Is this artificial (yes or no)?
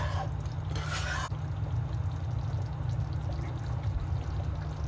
no